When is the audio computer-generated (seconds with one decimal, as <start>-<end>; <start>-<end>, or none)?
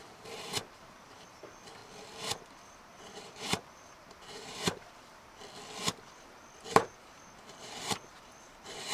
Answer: 0.0-1.8; 2.7-5.4; 6.6-8.9